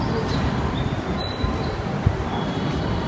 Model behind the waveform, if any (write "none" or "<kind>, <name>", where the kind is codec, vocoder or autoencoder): none